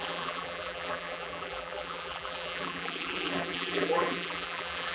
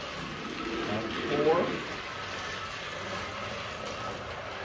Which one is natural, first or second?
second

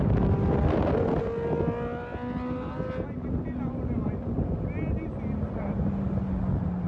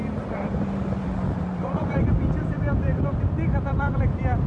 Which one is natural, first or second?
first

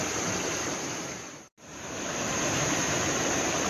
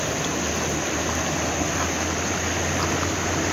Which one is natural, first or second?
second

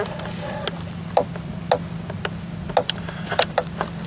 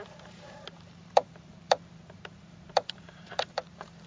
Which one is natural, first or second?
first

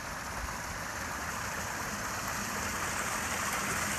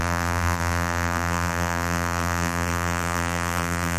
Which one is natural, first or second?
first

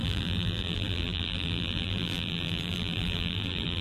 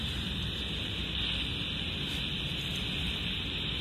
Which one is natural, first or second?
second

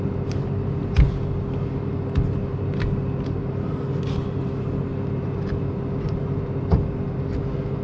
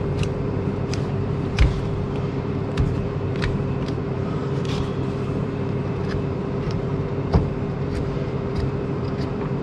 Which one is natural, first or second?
first